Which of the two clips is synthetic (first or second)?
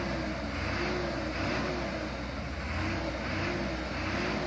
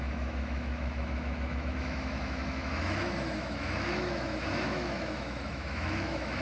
second